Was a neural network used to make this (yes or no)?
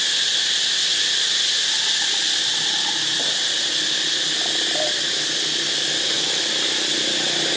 no